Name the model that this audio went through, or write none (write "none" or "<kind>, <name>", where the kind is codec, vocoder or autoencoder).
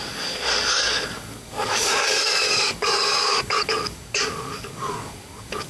codec, DAC